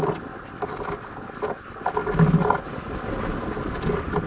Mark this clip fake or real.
real